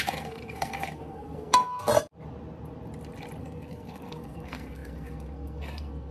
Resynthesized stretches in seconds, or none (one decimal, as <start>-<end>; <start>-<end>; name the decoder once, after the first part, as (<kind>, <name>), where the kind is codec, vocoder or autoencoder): 0.0-1.9 (codec, SNAC); 3.4-6.1